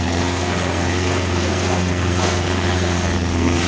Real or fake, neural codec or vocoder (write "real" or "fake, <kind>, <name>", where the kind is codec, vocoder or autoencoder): fake, codec, SNAC